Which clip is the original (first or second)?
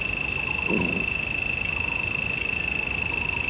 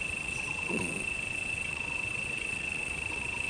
first